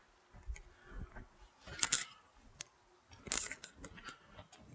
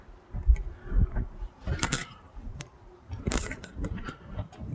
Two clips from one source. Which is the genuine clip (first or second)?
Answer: first